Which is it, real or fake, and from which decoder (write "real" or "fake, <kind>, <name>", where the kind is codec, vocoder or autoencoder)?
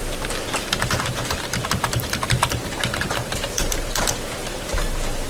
fake, vocoder, BigVGAN v2